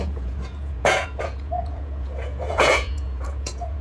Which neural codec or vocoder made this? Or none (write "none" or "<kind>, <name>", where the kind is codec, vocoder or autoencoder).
vocoder, Vocos